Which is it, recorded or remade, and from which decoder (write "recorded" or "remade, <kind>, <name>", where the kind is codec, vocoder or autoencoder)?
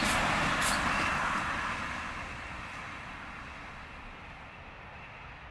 recorded